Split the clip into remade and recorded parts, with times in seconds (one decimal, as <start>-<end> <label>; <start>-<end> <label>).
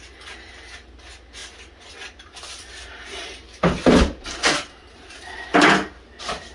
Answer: 0.0-6.5 recorded